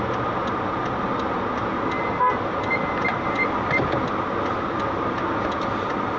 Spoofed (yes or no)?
no